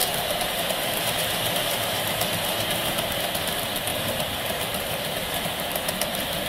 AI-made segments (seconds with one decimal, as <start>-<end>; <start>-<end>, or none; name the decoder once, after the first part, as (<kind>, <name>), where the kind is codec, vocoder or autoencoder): 0.0-3.2 (vocoder, BigVGAN v2); 3.9-5.4